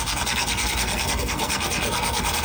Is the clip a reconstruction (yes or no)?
yes